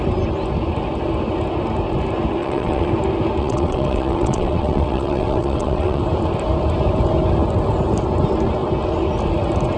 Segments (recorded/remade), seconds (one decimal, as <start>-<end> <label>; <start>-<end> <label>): 0.0-2.4 recorded; 2.4-2.9 remade; 2.9-3.4 recorded; 3.4-6.0 remade; 6.0-9.8 recorded